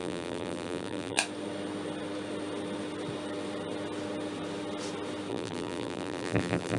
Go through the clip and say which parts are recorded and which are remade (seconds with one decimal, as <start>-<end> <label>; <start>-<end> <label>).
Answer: 0.0-1.2 remade; 1.2-5.3 recorded; 5.3-6.8 remade